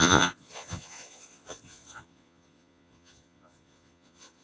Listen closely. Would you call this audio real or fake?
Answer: fake